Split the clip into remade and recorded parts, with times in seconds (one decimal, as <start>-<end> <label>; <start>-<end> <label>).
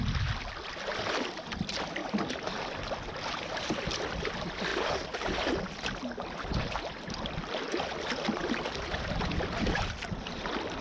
0.0-10.8 recorded